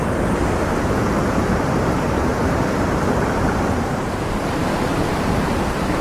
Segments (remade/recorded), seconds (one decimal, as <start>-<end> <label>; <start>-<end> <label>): 0.0-0.4 remade; 0.4-1.3 recorded; 1.3-2.3 remade; 2.3-2.8 recorded; 2.8-6.0 remade